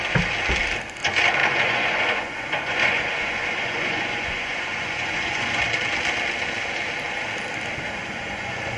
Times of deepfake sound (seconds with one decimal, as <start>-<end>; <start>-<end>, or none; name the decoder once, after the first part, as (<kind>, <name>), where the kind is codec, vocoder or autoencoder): 1.4-5.6 (vocoder, Vocos); 8.0-8.8